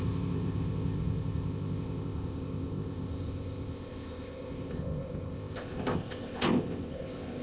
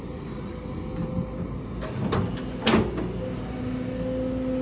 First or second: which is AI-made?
first